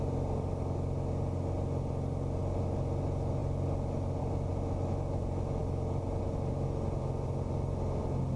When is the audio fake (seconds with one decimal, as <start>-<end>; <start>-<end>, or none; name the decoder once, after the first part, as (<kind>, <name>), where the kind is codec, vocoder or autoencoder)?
none